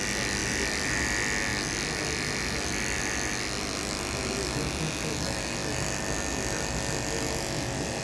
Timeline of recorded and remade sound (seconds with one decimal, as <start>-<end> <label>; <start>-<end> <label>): 0.0-8.0 recorded